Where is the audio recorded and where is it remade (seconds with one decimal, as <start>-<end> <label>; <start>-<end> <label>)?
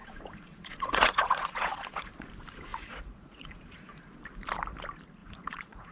0.0-2.3 remade; 2.3-2.7 recorded; 2.7-3.9 remade; 3.9-5.2 recorded; 5.2-5.9 remade